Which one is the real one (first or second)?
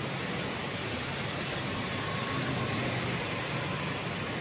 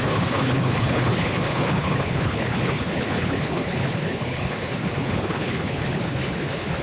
first